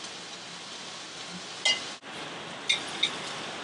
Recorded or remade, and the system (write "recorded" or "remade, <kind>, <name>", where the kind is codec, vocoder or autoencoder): recorded